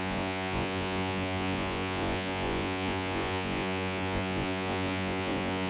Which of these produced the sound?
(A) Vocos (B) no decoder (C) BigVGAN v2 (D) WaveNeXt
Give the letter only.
A